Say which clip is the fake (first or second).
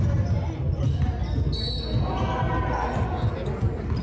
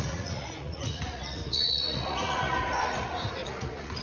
second